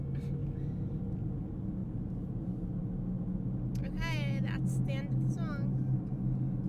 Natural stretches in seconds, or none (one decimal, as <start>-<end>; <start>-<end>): 0.0-6.7